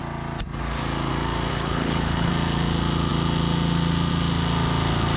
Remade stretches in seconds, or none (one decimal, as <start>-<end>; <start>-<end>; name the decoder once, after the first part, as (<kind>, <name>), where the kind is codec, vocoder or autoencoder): 1.5-2.3 (codec, HILCodec)